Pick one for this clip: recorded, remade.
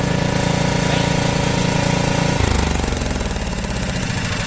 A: remade